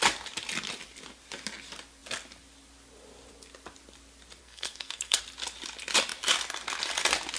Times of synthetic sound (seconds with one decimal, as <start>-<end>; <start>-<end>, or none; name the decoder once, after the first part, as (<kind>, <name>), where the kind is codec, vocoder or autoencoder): 4.4-5.2 (codec, SNAC)